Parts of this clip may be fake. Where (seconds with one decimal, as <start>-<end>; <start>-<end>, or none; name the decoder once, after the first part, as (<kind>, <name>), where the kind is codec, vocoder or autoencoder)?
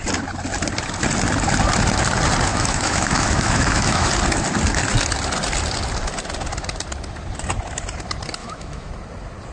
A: 2.5-4.1 (autoencoder, DAC-VAE); 8.4-8.9